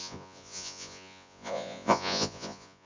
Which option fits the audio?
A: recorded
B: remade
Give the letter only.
B